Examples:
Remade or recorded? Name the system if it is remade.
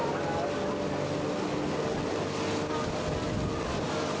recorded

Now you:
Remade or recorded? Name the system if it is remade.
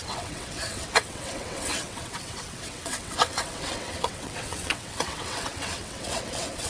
remade, vocoder, WaveNeXt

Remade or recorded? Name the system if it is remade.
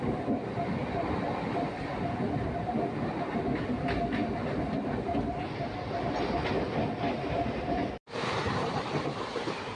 recorded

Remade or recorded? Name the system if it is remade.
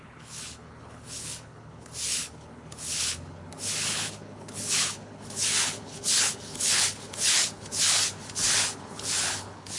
remade, codec, HILCodec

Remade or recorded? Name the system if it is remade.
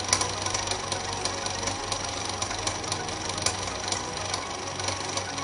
recorded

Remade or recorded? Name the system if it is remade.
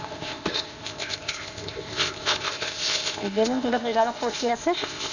remade, codec, ZipCodec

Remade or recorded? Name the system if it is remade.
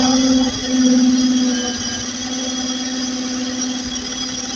recorded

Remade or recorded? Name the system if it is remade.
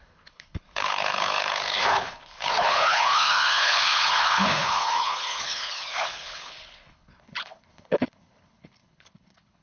remade, codec, HILCodec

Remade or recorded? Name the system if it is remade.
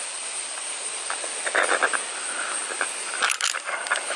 recorded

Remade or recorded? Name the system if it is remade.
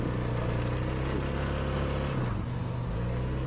recorded